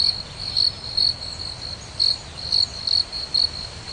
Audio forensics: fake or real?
real